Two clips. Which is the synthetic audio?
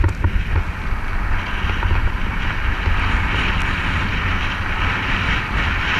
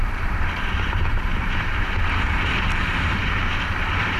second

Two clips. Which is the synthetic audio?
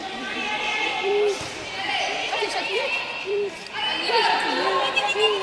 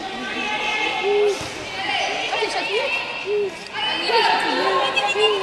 first